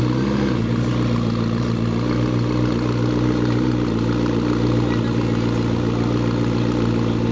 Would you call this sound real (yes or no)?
yes